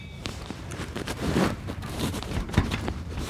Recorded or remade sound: remade